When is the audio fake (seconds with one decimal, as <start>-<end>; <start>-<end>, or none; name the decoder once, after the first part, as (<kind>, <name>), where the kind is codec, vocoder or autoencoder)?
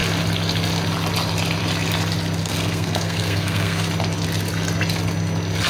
2.4-3.9 (codec, SNAC)